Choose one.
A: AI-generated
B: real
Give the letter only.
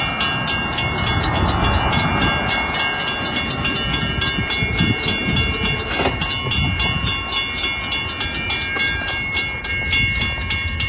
B